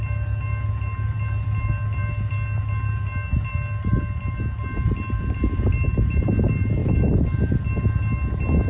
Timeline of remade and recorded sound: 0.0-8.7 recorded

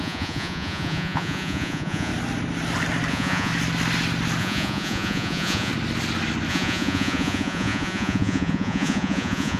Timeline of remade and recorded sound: 0.0-2.1 remade; 2.1-3.1 recorded; 3.1-3.5 remade; 3.5-4.4 recorded; 4.4-5.7 remade; 5.7-6.5 recorded; 6.5-9.6 remade